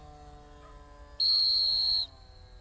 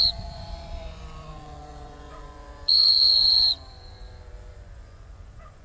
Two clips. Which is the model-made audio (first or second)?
second